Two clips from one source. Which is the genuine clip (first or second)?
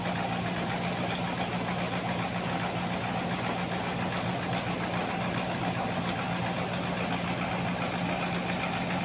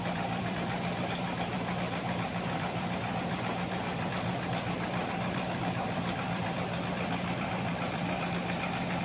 first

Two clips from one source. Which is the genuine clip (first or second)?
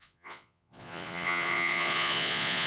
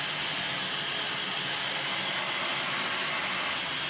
second